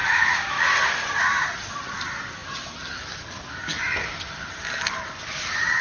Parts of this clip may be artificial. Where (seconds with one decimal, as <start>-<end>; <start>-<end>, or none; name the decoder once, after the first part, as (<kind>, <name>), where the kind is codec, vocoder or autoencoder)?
0.0-0.6 (autoencoder, DAC-VAE)